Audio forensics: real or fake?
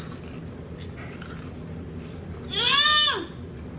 real